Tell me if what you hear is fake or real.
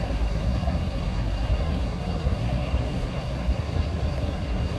fake